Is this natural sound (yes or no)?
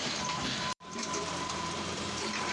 no